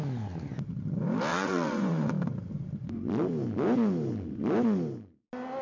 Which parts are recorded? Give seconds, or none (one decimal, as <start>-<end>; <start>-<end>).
0.0-1.3; 2.1-5.6